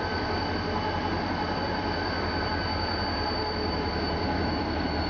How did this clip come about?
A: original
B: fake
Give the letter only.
B